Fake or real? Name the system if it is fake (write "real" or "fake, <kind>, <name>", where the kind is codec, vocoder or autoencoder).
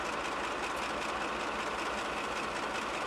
real